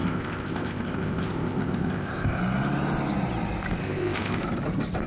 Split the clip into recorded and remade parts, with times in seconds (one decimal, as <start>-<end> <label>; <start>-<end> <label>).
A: 0.0-2.4 remade; 2.4-3.8 recorded; 3.8-4.4 remade; 4.4-5.1 recorded